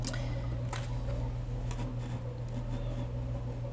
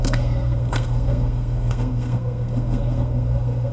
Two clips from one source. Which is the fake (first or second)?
second